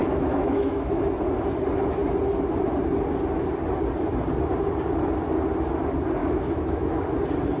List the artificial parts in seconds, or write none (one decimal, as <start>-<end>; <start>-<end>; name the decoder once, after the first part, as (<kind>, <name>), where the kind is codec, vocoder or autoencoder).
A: 0.0-1.0 (autoencoder, DAC-VAE); 6.2-6.9